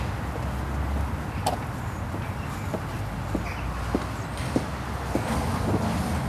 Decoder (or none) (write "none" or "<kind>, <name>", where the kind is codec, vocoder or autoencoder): none